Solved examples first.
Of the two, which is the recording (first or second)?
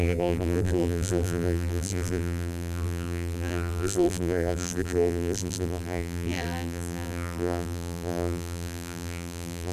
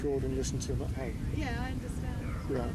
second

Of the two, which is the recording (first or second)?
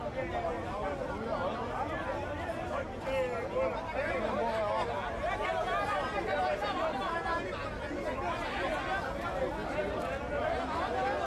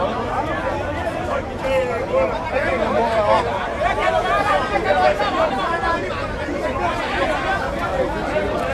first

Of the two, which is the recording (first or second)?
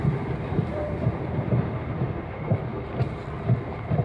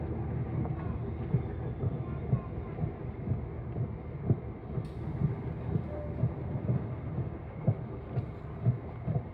second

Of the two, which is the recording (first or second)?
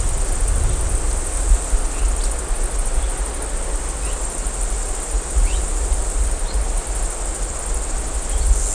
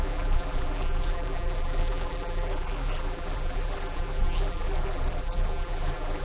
first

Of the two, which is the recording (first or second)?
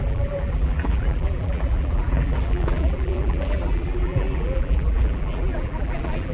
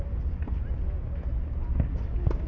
second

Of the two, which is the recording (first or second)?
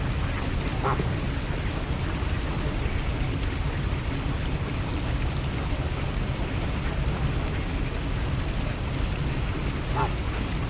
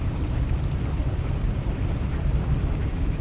first